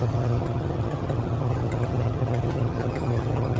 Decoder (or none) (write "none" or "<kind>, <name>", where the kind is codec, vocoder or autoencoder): vocoder, HiFi-GAN